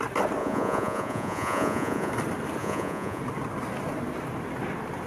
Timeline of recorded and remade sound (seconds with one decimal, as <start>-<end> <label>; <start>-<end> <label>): 0.0-0.4 recorded; 0.4-2.1 remade; 2.1-2.6 recorded; 2.6-3.2 remade; 3.2-5.1 recorded